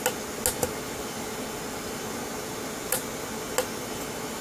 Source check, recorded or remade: recorded